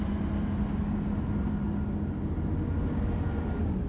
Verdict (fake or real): real